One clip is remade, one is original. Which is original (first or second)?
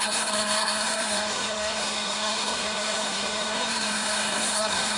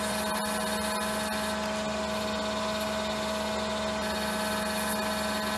second